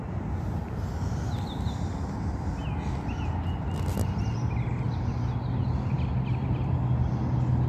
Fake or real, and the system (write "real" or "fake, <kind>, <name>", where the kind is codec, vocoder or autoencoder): real